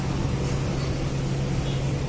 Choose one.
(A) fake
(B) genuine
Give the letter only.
B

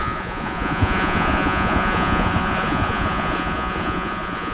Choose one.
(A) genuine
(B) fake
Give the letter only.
B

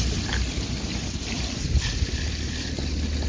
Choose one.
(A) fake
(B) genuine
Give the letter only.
B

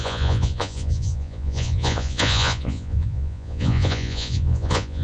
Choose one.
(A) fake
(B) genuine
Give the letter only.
A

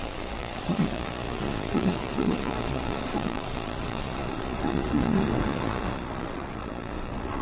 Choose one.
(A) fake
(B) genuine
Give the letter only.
A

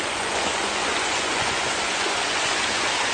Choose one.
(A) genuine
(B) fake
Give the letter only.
B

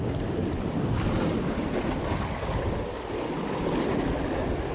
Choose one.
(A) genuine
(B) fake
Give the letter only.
A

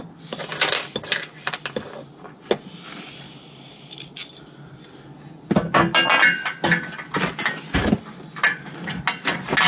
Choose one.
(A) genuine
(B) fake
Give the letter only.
A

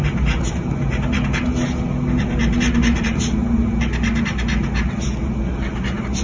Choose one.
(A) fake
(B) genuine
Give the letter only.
B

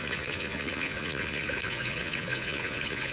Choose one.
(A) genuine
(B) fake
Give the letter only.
B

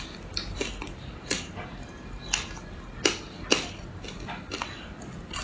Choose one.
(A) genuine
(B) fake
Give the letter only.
A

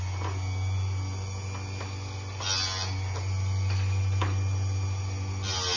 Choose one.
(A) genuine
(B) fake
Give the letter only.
A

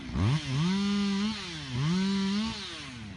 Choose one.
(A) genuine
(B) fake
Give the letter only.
A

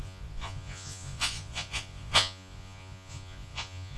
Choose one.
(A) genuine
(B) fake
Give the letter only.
B